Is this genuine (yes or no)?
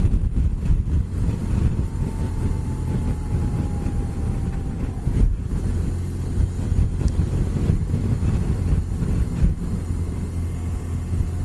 yes